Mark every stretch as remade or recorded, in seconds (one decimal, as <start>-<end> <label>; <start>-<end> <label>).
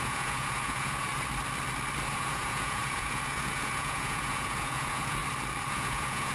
0.0-1.1 remade; 1.1-2.1 recorded; 2.1-5.2 remade; 5.2-5.7 recorded; 5.7-6.3 remade